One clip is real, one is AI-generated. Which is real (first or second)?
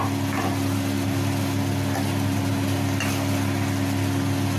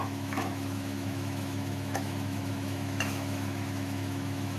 first